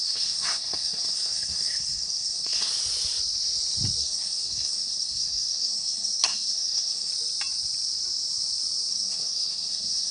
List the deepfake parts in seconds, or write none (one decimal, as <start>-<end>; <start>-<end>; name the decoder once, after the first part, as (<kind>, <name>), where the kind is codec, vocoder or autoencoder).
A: 0.0-2.7 (codec, SNAC); 4.0-7.1; 8.9-10.1